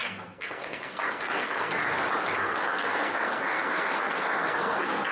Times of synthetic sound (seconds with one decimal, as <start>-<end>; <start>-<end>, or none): 0.0-1.8; 2.4-5.1